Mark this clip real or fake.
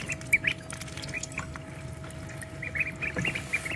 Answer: real